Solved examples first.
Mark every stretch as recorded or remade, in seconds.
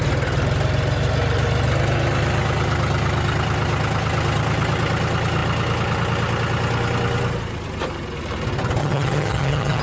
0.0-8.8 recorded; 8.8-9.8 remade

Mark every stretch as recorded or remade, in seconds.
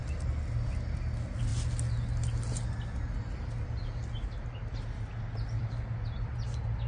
0.0-6.9 recorded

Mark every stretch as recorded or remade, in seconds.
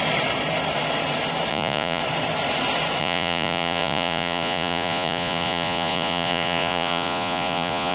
0.0-1.5 recorded; 1.5-2.0 remade; 2.0-3.0 recorded; 3.0-7.9 remade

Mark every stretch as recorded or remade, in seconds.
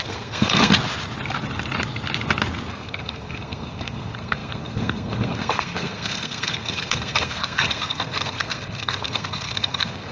0.0-0.7 remade; 0.7-2.7 recorded; 2.7-10.1 remade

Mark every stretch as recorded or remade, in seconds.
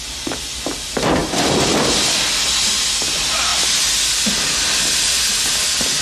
0.0-6.0 recorded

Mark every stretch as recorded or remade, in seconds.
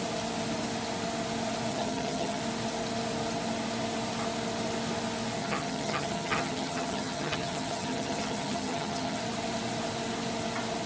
0.0-1.7 recorded; 1.7-2.4 remade; 2.4-5.4 recorded; 5.4-9.2 remade; 9.2-10.9 recorded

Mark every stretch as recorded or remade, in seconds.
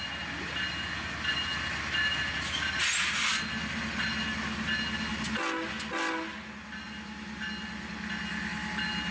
0.0-9.1 recorded